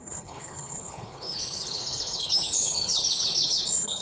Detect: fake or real fake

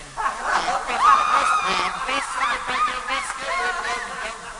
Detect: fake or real real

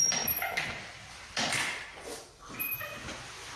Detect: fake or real real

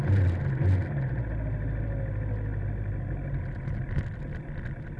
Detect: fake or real real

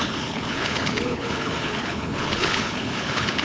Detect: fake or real fake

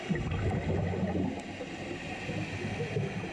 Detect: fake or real real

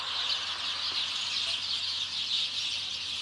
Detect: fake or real real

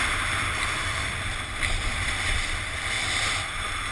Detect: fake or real real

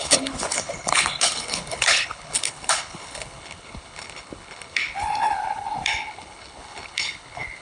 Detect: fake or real fake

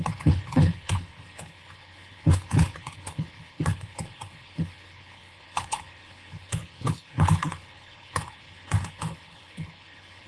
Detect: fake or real fake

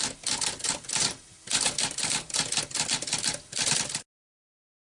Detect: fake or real real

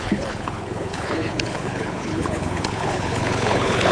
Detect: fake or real fake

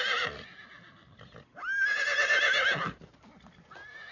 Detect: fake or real real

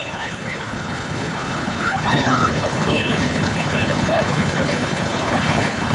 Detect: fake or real fake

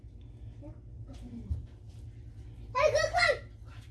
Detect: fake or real real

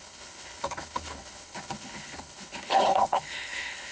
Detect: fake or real fake